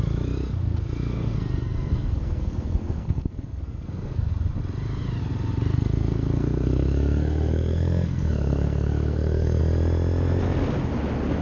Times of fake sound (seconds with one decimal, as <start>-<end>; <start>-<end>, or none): 0.5-4.3; 5.7-9.6